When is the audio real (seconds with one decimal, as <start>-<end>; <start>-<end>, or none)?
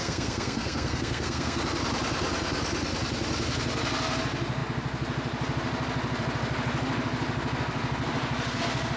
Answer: 1.6-9.0